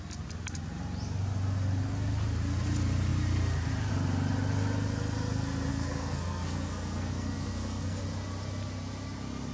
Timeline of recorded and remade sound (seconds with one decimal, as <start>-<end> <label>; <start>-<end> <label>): 0.0-5.7 recorded; 5.7-8.0 remade; 8.0-9.5 recorded